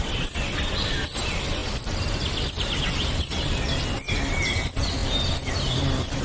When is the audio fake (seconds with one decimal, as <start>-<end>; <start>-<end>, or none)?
none